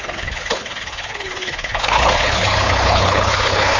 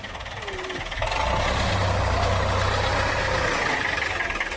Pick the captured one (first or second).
second